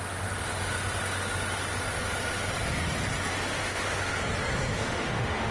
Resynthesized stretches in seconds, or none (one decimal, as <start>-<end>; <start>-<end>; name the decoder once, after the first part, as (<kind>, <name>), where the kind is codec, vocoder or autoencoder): 3.5-4.2 (autoencoder, DAC-VAE); 4.7-5.5